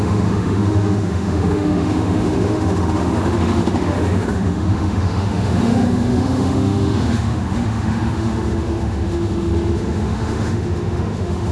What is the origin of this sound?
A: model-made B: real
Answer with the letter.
A